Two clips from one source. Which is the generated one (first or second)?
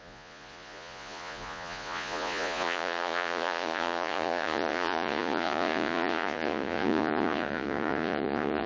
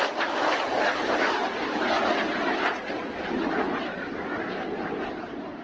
first